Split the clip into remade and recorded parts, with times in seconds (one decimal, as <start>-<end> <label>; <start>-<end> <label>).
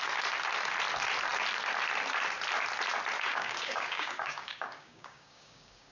0.0-3.3 recorded; 3.3-5.9 remade